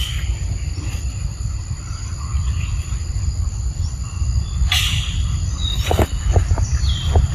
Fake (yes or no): yes